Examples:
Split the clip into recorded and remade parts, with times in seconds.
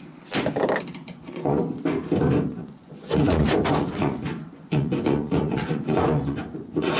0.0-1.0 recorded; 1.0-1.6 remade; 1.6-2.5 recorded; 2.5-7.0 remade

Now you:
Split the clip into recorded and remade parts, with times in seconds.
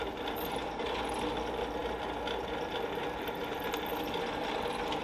0.0-5.0 recorded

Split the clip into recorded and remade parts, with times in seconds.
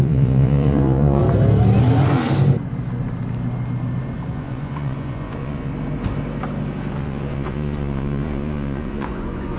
0.0-1.2 remade; 1.2-4.3 recorded; 4.3-5.7 remade; 5.7-6.9 recorded; 6.9-9.6 remade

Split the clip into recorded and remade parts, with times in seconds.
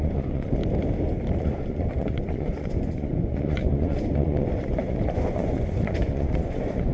0.0-0.6 remade; 0.6-1.4 recorded; 1.4-6.9 remade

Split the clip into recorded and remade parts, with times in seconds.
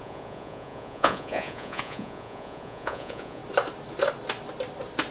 0.0-3.4 remade; 3.4-5.1 recorded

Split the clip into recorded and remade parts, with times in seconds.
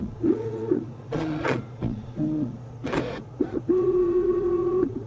0.0-5.1 remade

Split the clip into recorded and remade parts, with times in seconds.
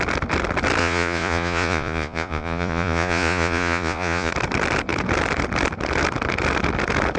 0.0-0.8 recorded; 0.8-4.3 remade; 4.3-7.2 recorded